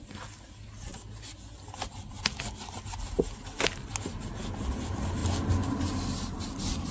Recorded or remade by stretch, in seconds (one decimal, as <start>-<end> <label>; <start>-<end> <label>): 0.0-6.9 recorded